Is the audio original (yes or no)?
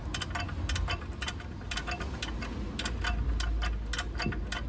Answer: yes